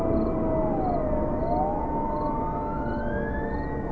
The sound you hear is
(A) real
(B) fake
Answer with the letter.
A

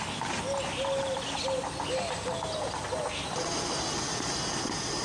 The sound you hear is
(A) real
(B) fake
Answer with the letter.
A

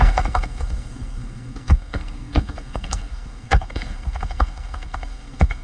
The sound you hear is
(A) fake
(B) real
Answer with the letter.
A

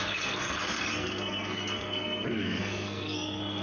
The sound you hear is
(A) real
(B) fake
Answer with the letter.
B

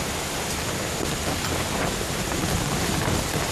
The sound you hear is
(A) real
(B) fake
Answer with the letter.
A